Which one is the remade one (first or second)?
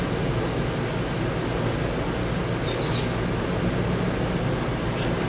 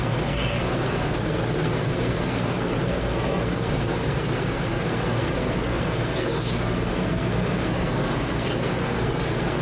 second